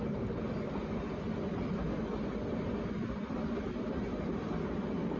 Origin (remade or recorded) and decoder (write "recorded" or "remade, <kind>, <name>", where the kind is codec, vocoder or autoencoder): recorded